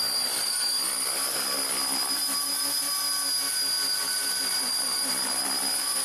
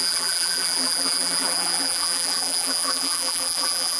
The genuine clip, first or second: first